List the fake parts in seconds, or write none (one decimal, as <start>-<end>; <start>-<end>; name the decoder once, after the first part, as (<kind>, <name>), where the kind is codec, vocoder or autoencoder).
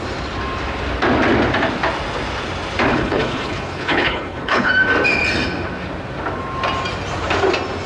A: 2.9-4.7 (codec, HILCodec)